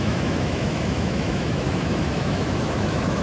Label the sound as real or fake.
fake